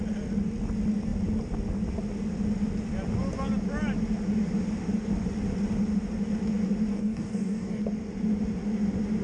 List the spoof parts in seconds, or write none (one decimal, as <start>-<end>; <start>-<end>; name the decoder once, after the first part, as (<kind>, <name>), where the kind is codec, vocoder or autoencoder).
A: 6.9-7.8 (codec, DAC)